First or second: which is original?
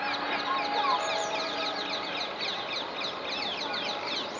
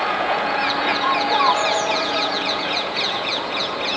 first